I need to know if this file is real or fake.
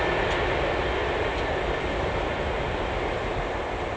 real